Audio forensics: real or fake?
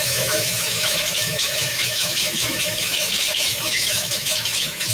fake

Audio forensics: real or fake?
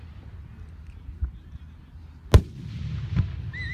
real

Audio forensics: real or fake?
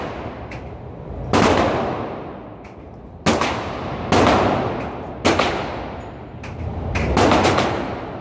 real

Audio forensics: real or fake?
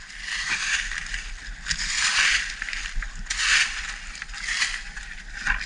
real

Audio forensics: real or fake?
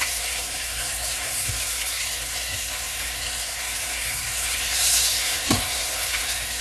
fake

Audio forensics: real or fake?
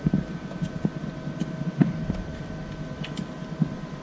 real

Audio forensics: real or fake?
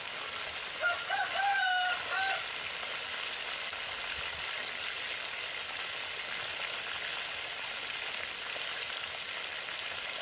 real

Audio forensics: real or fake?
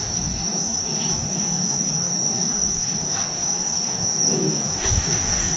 fake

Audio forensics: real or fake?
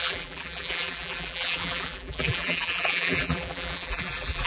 fake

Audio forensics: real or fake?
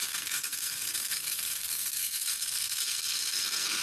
fake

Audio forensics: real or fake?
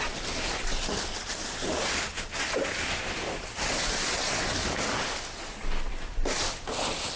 real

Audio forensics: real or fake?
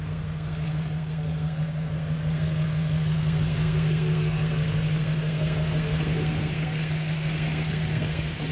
fake